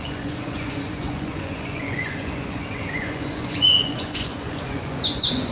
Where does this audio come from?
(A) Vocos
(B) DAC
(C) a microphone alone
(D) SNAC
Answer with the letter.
A